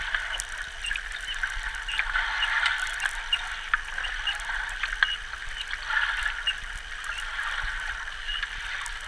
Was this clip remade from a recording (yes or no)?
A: no